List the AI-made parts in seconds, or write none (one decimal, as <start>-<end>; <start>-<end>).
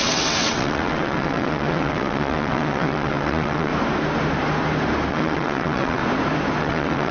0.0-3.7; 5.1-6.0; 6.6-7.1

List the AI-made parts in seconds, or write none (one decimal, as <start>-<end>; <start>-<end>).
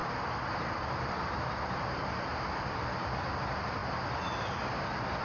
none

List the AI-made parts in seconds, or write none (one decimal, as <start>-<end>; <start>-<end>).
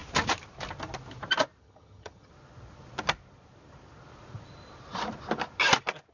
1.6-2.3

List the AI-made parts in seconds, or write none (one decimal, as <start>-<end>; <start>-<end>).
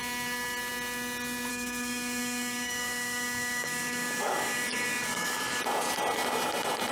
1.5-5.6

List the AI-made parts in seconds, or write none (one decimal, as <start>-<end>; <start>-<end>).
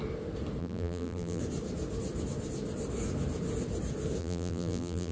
0.6-1.4; 4.2-5.1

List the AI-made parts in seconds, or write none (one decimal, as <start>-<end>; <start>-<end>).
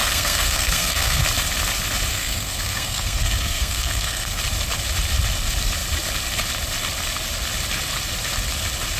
0.0-1.2; 2.1-4.4